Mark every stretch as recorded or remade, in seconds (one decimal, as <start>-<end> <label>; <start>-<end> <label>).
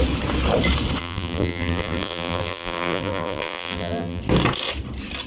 0.0-1.0 recorded; 1.0-4.2 remade; 4.2-5.3 recorded